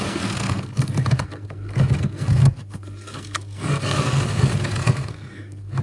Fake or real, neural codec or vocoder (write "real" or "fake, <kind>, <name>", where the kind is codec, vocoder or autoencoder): fake, codec, SNAC